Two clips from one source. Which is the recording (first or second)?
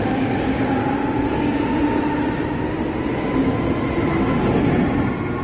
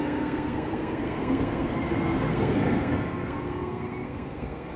first